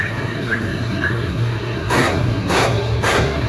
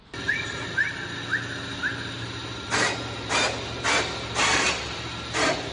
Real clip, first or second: second